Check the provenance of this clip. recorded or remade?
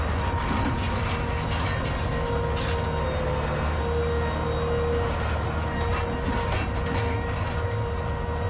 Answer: recorded